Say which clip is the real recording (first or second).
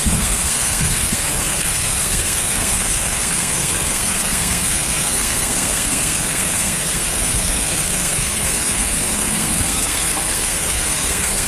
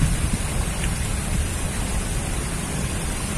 second